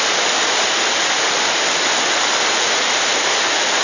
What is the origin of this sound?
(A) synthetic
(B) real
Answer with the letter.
B